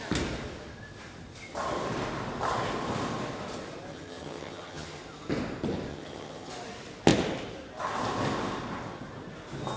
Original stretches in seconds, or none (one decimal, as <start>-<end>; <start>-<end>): 0.0-3.9; 5.0-5.9; 6.5-9.8